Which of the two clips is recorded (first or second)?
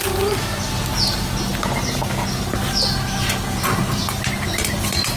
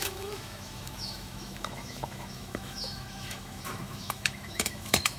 first